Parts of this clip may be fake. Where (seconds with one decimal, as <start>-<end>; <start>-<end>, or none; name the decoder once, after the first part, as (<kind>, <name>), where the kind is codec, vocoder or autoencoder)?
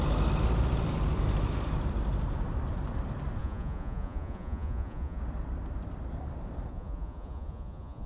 3.4-5.2 (vocoder, Vocos); 6.7-8.1